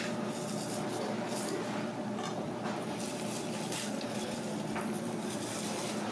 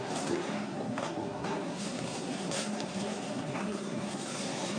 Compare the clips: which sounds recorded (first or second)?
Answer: first